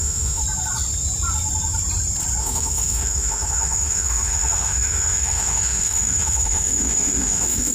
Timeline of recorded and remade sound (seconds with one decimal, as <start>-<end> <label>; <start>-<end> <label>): 0.0-0.4 remade; 0.4-2.4 recorded; 2.4-7.7 remade